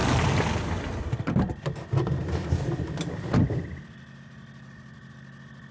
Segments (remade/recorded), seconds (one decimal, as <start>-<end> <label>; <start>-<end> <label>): 0.0-5.7 recorded